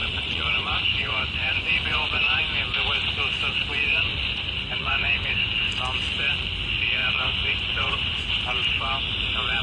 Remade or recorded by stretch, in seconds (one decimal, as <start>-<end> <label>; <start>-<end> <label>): 0.0-2.4 remade; 2.4-3.9 recorded; 3.9-5.7 remade; 5.7-7.0 recorded; 7.0-8.3 remade; 8.3-9.6 recorded